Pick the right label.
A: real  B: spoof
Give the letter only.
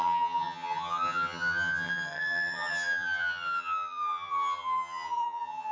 B